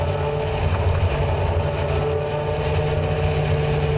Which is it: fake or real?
real